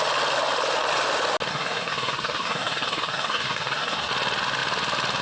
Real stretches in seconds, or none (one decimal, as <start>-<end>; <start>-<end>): 0.0-1.5; 4.1-5.2